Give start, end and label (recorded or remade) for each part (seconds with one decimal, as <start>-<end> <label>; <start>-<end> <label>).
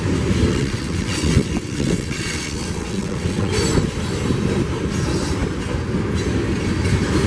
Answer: 0.0-0.5 recorded; 0.5-3.5 remade; 3.5-7.3 recorded